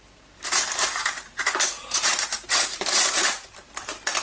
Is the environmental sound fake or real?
fake